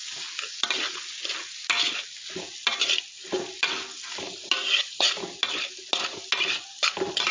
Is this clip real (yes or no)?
yes